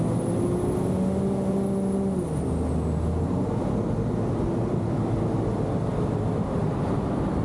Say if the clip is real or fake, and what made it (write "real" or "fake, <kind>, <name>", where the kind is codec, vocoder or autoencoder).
real